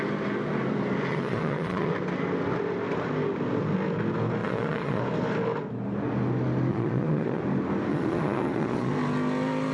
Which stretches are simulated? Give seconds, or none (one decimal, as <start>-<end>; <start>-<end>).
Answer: 1.1-1.9; 4.4-5.0; 6.7-7.4; 7.9-8.9